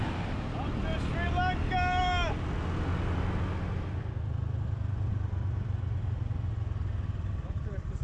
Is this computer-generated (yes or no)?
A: no